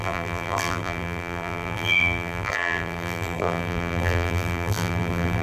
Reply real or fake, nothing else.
fake